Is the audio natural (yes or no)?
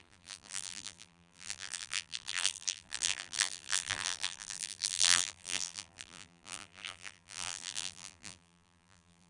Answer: no